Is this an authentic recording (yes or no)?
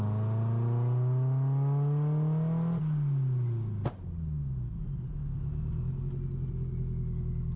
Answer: yes